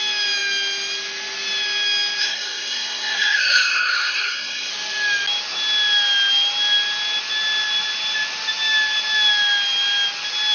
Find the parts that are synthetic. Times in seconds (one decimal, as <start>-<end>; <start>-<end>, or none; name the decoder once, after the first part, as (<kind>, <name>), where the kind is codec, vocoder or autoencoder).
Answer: 2.2-4.7 (codec, SNAC)